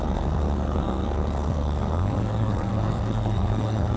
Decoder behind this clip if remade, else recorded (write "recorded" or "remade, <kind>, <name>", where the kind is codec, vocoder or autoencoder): remade, codec, SNAC